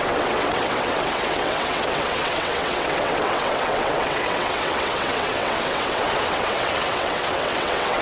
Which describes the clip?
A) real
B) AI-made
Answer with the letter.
B